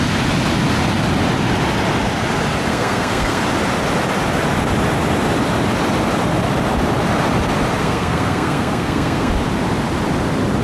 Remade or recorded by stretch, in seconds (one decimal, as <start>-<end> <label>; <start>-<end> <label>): 0.0-2.7 recorded; 2.7-3.4 remade; 3.4-7.8 recorded; 7.8-9.3 remade; 9.3-10.6 recorded